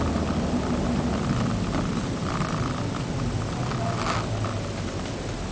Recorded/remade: recorded